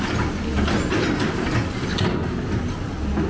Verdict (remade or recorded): recorded